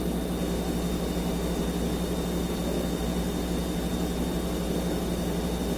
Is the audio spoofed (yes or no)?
no